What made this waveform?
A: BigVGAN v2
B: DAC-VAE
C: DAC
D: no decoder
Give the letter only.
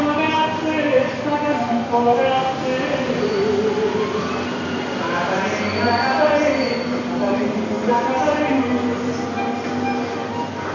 D